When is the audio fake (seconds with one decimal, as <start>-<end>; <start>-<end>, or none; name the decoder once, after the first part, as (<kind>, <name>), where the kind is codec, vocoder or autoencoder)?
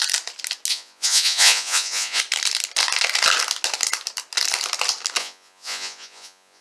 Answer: 0.7-2.2 (vocoder, Vocos); 5.2-6.6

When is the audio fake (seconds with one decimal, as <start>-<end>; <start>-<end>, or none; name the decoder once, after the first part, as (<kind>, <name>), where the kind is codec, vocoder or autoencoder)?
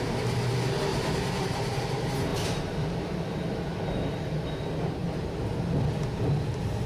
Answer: 0.9-1.8 (vocoder, BigVGAN v2)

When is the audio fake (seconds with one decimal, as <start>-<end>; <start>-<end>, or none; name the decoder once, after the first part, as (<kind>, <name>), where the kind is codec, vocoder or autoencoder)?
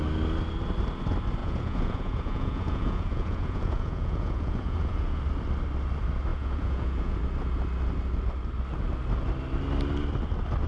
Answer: 1.4-5.2 (vocoder, Vocos); 6.3-7.2